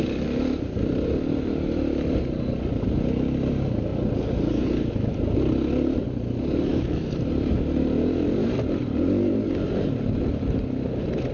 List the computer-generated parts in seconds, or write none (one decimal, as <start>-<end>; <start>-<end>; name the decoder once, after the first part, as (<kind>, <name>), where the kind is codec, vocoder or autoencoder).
6.7-7.3 (vocoder, BigVGAN v2)